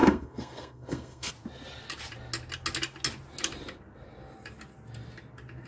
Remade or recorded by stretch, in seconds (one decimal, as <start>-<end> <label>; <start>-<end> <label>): 0.0-1.3 remade; 1.3-5.7 recorded